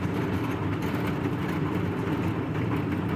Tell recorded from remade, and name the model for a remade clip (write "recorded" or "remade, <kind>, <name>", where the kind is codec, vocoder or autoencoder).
recorded